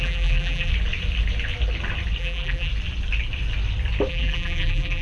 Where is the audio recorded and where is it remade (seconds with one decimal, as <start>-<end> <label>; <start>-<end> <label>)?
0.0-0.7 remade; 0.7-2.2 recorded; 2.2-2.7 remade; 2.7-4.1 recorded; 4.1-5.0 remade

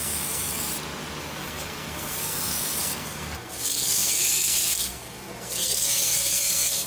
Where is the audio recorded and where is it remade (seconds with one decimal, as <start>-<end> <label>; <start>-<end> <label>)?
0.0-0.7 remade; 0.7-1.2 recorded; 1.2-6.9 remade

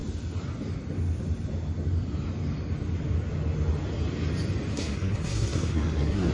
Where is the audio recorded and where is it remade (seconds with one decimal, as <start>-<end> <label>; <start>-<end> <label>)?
0.0-4.7 recorded; 4.7-6.3 remade

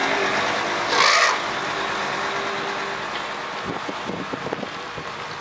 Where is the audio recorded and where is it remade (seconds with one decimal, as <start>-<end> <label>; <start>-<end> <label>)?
0.0-5.4 recorded

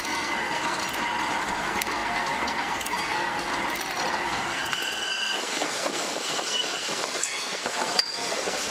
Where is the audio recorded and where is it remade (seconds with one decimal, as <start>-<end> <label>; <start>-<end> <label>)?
0.0-0.8 remade; 0.8-1.4 recorded; 1.4-3.5 remade; 3.5-4.1 recorded; 4.1-8.7 remade

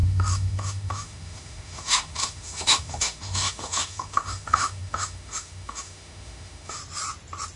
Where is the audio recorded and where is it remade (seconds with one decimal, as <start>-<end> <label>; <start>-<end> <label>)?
0.0-6.8 remade; 6.8-7.6 recorded

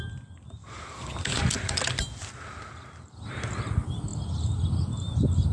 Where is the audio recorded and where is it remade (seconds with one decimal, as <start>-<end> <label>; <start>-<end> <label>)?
0.0-5.5 recorded